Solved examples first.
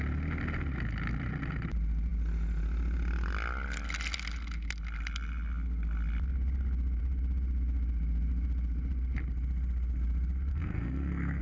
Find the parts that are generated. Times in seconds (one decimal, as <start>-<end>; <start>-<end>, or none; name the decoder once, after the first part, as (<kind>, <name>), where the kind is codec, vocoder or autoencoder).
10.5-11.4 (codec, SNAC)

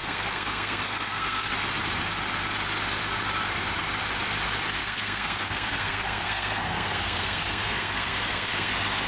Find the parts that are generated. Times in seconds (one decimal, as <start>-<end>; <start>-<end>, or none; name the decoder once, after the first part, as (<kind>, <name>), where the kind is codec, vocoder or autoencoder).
0.0-1.5 (codec, SNAC); 4.8-8.7

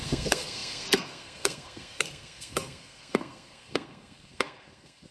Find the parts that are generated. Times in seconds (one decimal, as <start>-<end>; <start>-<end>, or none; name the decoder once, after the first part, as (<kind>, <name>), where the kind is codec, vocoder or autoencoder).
0.0-5.1 (codec, SNAC)

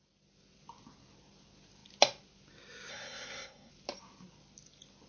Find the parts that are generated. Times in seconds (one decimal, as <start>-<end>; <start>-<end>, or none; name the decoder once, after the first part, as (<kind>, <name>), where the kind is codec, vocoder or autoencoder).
2.9-3.7 (codec, SNAC)